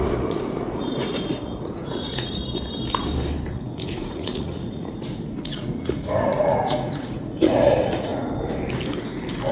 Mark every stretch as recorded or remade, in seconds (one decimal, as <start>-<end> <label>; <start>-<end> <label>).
0.0-2.4 remade; 2.4-3.5 recorded; 3.5-8.1 remade; 8.1-9.5 recorded